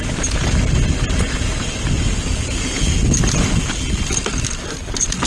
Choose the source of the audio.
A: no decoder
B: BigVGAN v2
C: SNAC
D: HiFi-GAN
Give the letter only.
A